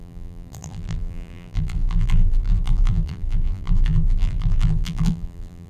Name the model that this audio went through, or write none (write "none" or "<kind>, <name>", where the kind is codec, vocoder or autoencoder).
vocoder, BigVGAN v2